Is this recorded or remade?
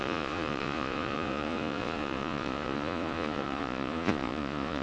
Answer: remade